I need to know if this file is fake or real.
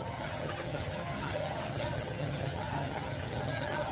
fake